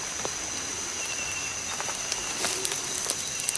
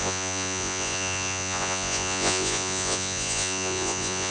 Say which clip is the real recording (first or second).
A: first